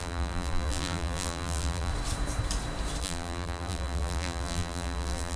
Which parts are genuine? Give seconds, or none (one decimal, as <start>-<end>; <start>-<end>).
1.9-3.0